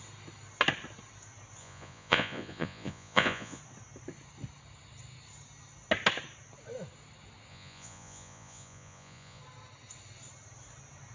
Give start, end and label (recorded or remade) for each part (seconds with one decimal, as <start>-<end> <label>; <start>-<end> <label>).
0.0-1.6 recorded; 1.6-3.6 remade; 3.6-7.5 recorded; 7.5-9.4 remade; 9.4-11.1 recorded